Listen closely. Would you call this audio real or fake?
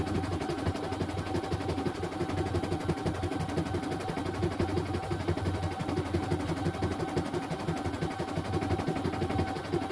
real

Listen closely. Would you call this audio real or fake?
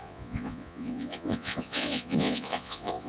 fake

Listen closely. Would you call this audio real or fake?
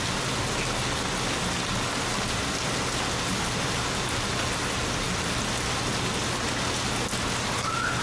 real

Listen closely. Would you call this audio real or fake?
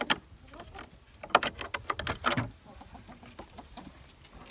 real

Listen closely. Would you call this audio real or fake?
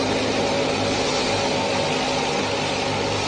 real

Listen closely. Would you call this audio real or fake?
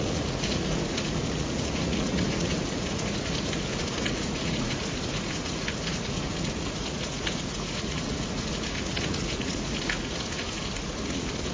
fake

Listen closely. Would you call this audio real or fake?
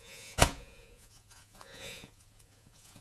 fake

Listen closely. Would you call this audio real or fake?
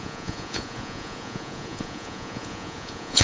fake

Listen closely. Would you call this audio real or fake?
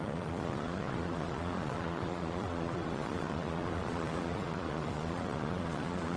fake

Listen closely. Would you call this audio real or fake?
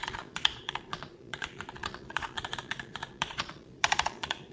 fake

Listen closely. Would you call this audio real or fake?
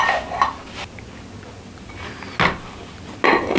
real